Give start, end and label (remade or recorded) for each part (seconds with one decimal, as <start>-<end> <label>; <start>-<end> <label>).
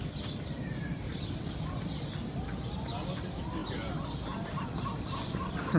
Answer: 0.0-5.8 recorded